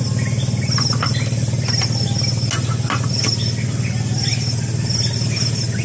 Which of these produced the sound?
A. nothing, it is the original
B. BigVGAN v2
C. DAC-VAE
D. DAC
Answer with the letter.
A